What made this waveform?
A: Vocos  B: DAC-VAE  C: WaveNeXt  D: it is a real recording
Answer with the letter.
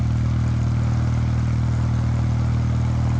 D